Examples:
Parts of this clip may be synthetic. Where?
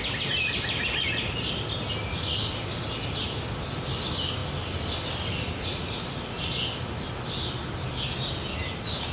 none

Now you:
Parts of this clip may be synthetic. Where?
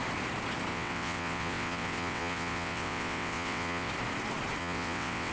0.7-3.9 (vocoder, WaveNeXt); 4.6-5.3